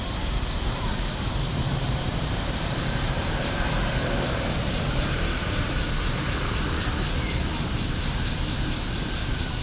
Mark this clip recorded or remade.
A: remade